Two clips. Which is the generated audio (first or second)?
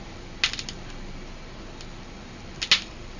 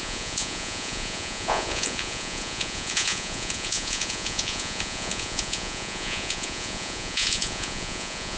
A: second